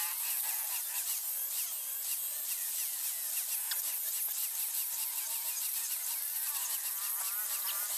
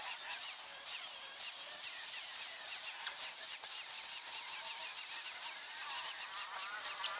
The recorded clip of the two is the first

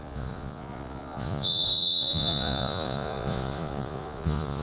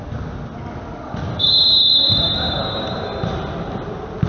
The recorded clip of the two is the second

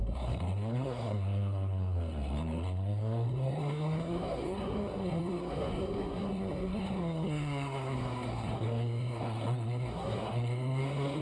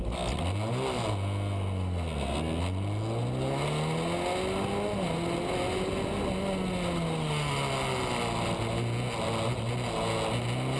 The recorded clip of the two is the second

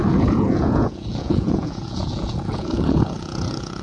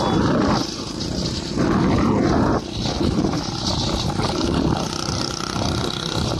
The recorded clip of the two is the second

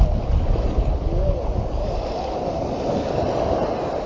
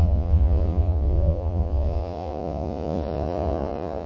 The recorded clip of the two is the first